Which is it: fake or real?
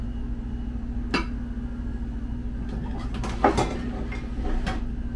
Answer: real